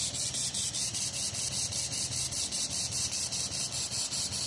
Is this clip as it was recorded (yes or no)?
yes